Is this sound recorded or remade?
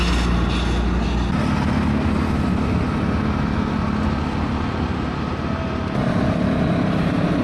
recorded